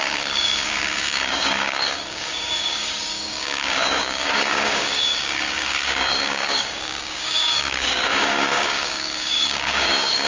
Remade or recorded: remade